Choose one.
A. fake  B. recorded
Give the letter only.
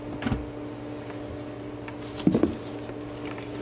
B